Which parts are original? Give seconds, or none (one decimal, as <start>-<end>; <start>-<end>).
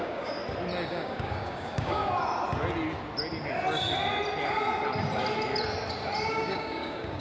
0.4-0.9; 2.0-6.3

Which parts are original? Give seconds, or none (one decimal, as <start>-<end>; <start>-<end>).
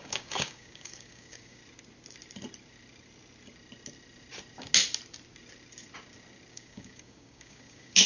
1.6-6.5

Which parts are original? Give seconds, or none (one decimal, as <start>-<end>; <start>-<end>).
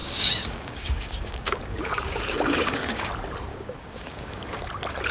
3.1-3.5; 4.6-5.1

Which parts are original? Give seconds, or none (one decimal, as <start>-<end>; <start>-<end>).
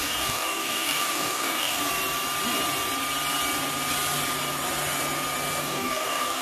1.8-5.6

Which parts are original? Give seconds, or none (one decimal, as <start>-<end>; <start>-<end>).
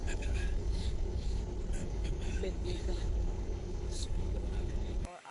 1.4-1.8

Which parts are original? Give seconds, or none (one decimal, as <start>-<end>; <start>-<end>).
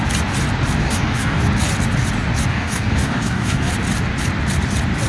0.0-0.8; 1.4-2.5; 3.7-5.1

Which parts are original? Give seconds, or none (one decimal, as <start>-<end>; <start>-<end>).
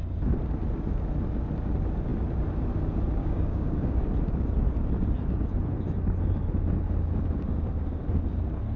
0.0-3.2; 4.1-8.8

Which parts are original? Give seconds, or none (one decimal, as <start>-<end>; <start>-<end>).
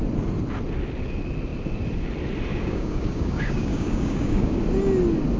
0.0-2.5; 4.6-5.4